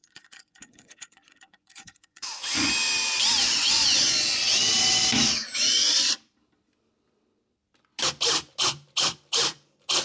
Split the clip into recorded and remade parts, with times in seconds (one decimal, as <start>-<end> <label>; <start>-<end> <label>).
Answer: 0.0-2.7 remade; 2.7-3.5 recorded; 3.5-4.4 remade; 4.4-10.0 recorded